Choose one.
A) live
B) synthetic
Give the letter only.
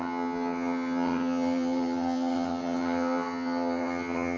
B